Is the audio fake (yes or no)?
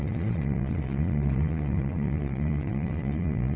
yes